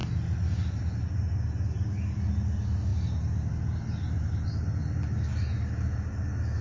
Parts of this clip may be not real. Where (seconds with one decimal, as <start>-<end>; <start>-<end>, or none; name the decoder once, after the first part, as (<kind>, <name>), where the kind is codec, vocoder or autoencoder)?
none